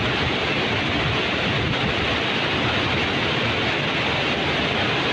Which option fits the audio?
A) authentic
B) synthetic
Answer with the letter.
A